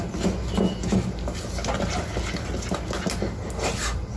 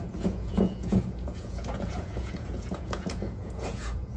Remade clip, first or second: second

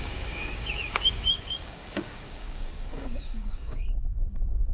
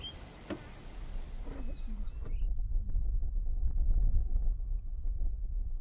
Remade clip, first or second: first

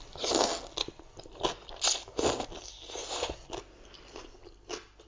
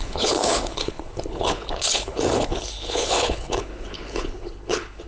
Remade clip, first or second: second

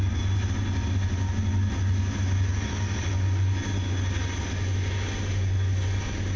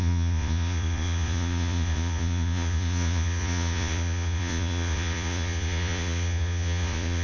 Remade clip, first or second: second